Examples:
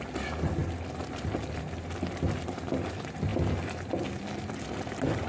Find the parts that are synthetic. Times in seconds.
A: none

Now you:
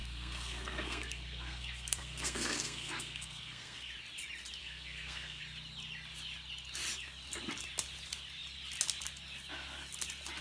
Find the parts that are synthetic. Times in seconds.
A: 0.0-3.9 (codec, SNAC); 4.6-5.4

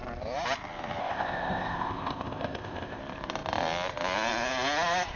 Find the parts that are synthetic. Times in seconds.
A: 1.0-3.0 (codec, ZipCodec)

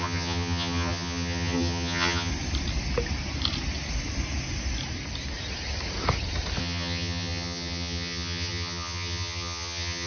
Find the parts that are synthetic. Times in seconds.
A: 0.0-2.3 (vocoder, HiFi-GAN); 6.6-10.1

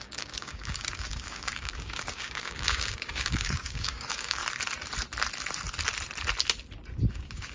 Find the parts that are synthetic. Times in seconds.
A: 0.0-4.4 (codec, DAC); 7.1-7.5

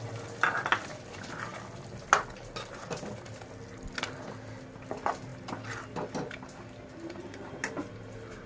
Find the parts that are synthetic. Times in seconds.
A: none